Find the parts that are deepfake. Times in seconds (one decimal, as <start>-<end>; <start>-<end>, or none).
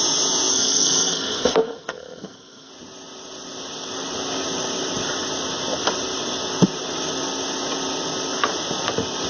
0.5-2.7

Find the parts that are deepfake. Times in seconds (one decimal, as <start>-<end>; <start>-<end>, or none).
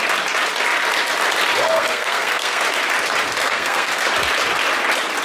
1.6-2.6; 3.4-4.0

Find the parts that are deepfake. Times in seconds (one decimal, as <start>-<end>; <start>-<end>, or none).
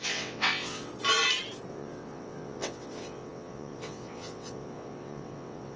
0.0-0.9; 1.7-5.8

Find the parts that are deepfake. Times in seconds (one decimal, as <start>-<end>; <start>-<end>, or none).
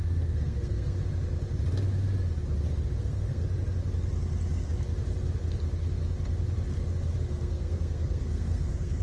0.0-1.0; 3.0-3.4; 7.2-9.0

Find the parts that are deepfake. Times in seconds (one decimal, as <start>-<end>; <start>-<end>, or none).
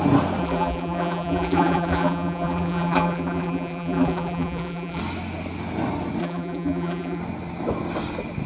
0.4-5.0; 6.2-7.2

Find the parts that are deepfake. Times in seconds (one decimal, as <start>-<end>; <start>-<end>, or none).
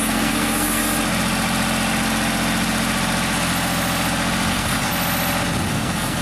0.0-0.8; 4.5-4.9; 5.7-6.2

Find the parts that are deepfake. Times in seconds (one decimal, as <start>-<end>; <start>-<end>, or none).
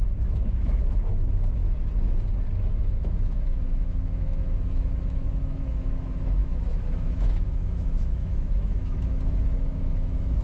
0.0-1.6; 2.7-10.4